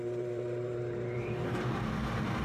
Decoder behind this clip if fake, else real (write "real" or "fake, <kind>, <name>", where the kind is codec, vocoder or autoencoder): fake, vocoder, BigVGAN v2